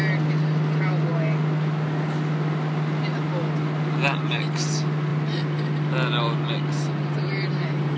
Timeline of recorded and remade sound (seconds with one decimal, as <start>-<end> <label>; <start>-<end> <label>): 0.0-8.0 recorded